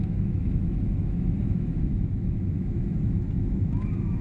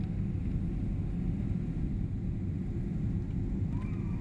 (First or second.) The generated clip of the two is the first